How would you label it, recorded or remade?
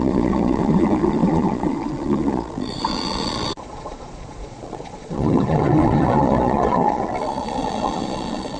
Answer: remade